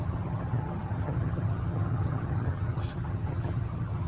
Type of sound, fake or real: fake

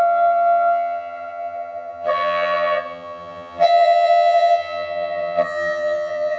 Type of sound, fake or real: fake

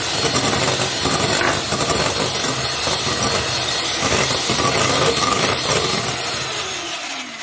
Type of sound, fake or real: real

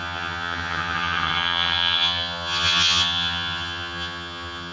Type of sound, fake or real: fake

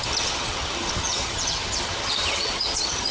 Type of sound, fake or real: fake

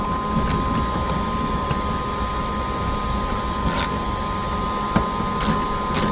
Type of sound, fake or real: real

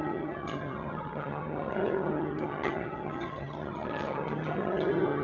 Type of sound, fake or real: fake